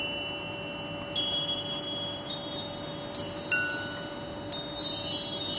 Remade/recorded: recorded